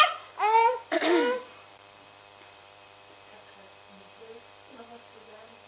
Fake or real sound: fake